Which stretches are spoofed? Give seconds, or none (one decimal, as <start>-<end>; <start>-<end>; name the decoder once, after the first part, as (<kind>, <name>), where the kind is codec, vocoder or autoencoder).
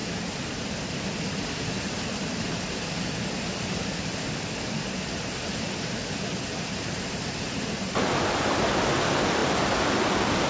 none